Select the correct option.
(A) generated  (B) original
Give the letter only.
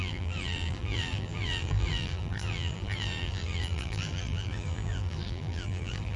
A